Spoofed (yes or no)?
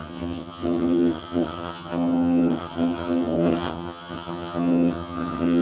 yes